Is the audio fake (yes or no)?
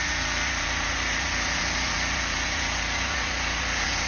yes